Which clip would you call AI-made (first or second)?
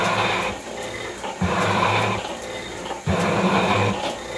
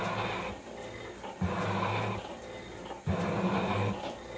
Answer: first